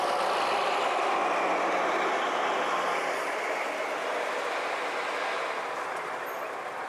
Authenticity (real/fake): real